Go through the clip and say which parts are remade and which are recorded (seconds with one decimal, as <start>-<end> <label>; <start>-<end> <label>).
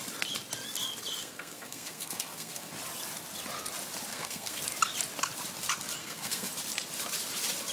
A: 0.0-1.2 recorded; 1.2-2.7 remade; 2.7-4.1 recorded; 4.1-4.6 remade; 4.6-6.0 recorded; 6.0-6.5 remade; 6.5-7.7 recorded